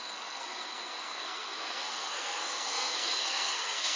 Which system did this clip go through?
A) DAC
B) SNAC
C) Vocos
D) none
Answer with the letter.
B